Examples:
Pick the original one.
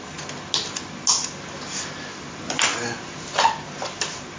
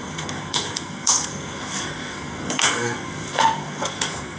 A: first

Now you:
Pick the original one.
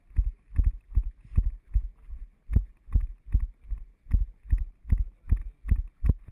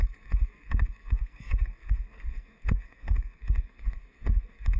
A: first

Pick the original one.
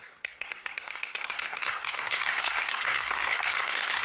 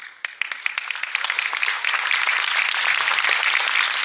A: second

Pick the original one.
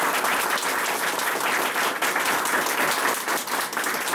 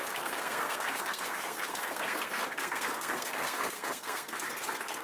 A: first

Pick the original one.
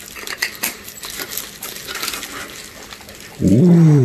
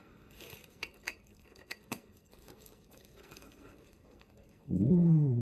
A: first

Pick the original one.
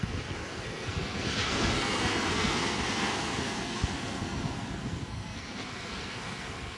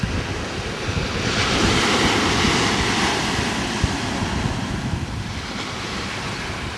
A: second